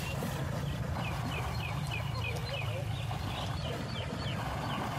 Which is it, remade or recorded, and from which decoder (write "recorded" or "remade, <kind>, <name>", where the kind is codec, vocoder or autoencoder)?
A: recorded